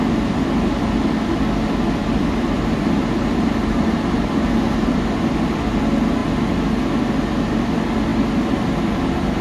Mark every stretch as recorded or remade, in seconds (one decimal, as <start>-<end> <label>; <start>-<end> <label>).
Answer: 0.0-2.0 recorded; 2.0-5.0 remade; 5.0-9.4 recorded